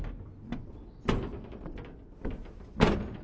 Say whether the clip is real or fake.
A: real